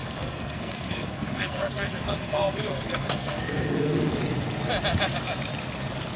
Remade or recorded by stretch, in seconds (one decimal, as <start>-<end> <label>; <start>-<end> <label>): 0.0-4.1 remade; 4.1-6.2 recorded